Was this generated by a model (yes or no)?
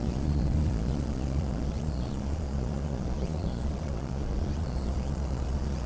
yes